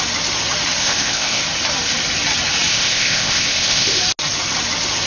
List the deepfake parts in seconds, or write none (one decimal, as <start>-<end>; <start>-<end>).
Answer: 0.8-1.4; 2.7-4.0